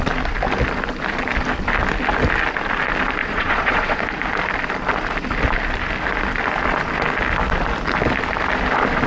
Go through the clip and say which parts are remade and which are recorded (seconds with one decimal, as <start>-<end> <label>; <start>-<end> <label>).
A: 0.0-3.2 recorded; 3.2-4.0 remade; 4.0-9.1 recorded

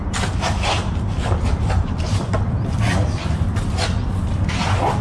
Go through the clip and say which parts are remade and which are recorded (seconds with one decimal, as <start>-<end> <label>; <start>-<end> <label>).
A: 0.0-5.0 recorded

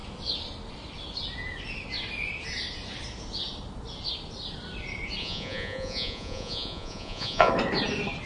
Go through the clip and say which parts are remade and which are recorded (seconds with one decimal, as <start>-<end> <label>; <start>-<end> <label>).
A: 0.0-5.2 recorded; 5.2-7.5 remade; 7.5-8.3 recorded